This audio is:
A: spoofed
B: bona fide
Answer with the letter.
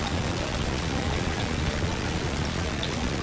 A